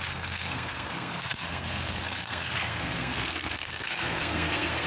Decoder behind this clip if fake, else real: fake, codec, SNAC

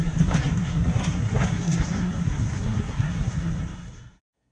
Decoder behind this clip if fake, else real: fake, codec, SNAC